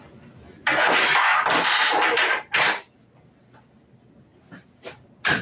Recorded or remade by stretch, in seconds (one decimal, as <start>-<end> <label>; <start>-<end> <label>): 0.0-1.3 recorded; 1.3-2.5 remade; 2.5-4.3 recorded; 4.3-5.4 remade